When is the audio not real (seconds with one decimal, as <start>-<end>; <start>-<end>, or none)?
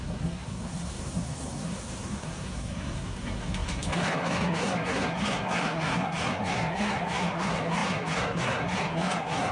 0.0-9.5